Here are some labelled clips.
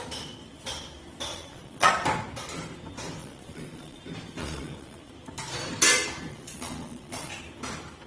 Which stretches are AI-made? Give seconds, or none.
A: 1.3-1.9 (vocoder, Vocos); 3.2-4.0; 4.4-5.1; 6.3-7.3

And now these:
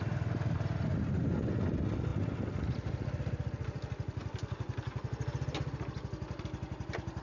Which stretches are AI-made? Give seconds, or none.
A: none

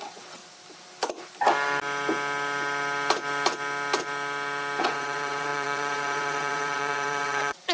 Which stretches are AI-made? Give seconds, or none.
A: 0.0-0.4 (vocoder, WaveNeXt); 4.8-7.7

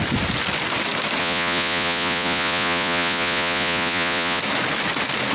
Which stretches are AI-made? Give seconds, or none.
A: 1.2-4.4 (vocoder, Vocos)

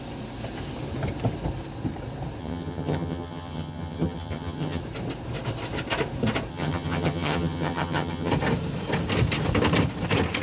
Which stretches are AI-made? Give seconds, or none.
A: 2.4-4.8 (vocoder, HiFi-GAN); 6.5-8.3

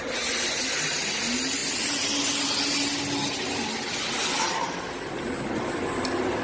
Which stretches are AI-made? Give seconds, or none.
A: none

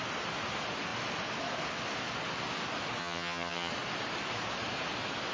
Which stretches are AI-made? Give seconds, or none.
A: 3.0-3.7 (vocoder, HiFi-GAN)

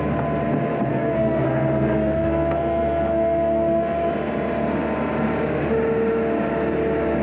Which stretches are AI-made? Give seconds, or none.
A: 0.9-4.1 (codec, SNAC)